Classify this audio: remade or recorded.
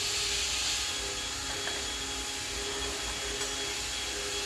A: recorded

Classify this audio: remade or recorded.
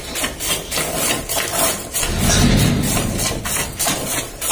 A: recorded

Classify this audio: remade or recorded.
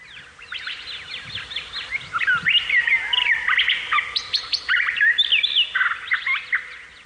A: recorded